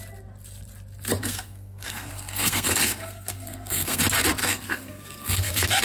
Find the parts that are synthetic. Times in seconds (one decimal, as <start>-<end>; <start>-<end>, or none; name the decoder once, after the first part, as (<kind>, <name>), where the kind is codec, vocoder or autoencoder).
1.2-4.0 (codec, SNAC); 4.4-5.8